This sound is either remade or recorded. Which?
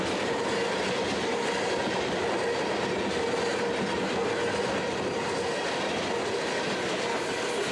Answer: recorded